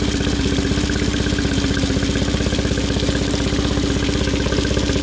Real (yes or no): yes